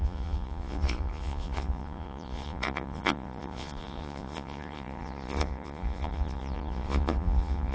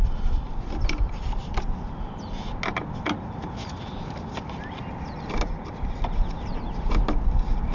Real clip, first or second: second